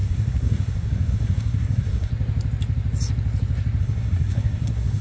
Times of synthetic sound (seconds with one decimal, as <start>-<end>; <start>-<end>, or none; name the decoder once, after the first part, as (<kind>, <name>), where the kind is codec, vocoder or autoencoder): 0.0-2.1 (codec, SNAC); 3.8-5.0

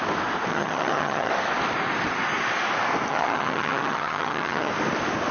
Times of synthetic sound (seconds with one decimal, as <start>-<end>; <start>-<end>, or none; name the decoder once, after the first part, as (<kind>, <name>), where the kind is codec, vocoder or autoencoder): 0.5-1.3 (vocoder, HiFi-GAN); 3.1-4.7

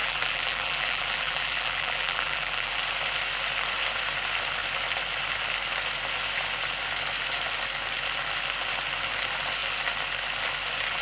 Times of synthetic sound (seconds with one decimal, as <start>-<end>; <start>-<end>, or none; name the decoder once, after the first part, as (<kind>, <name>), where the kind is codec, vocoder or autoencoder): 0.0-2.8 (vocoder, BigVGAN v2)

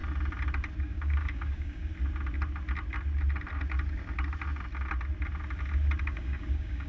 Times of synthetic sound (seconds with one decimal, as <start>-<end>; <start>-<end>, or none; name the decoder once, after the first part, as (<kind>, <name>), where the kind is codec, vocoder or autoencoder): 0.8-1.9 (codec, DAC); 6.0-6.9

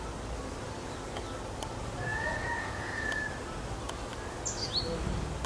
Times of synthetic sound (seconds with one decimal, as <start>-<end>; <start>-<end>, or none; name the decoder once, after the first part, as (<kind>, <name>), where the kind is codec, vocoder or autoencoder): 2.1-3.2 (vocoder, Vocos)

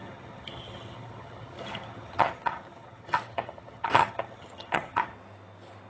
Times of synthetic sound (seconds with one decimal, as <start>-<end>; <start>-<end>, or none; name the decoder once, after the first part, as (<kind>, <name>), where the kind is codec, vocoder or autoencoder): 0.0-5.1 (vocoder, HiFi-GAN)

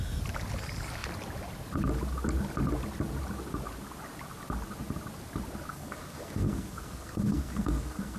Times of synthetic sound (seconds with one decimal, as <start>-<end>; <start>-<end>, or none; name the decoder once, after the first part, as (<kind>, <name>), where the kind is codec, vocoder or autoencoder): 5.7-8.2 (codec, SNAC)